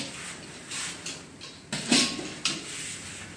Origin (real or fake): real